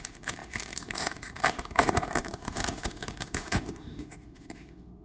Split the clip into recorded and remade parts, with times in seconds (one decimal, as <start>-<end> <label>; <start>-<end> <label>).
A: 0.0-5.0 remade